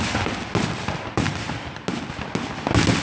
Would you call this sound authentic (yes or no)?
yes